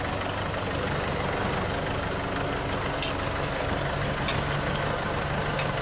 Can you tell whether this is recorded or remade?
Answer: recorded